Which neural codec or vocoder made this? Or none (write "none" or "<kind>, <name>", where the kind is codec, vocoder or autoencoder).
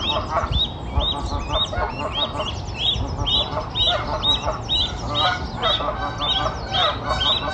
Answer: none